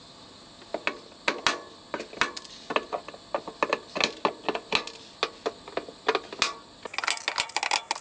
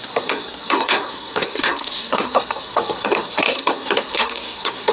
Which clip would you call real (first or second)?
first